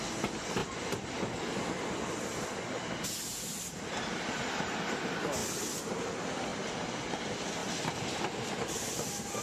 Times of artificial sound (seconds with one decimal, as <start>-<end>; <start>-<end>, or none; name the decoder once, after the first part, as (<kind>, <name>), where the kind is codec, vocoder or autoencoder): 0.6-1.2 (vocoder, BigVGAN v2); 5.4-5.9; 6.5-7.1; 7.6-9.4